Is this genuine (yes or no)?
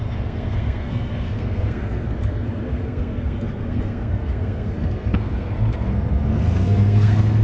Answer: no